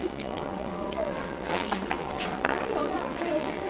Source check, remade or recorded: remade